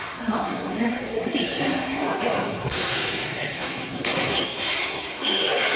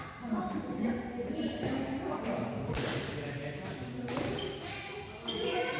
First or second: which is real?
second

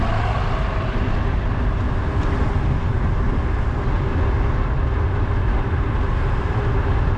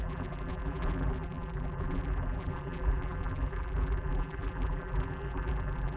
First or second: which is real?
first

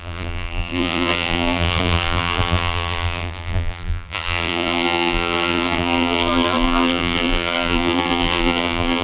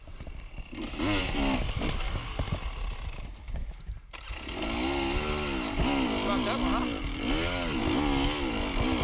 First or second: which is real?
second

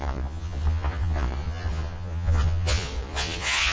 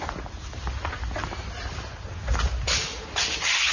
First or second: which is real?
second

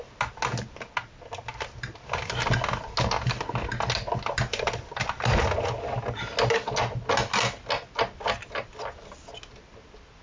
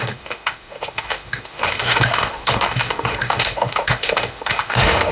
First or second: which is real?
first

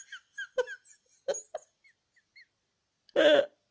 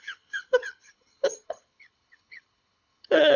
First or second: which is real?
first